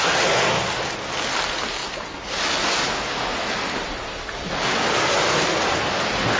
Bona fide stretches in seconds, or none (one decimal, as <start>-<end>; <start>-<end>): 0.0-6.4